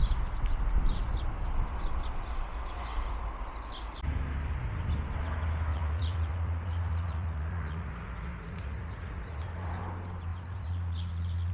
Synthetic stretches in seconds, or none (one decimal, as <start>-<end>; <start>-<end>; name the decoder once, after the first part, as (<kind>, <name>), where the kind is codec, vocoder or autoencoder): 5.7-9.8 (vocoder, Vocos); 10.3-11.5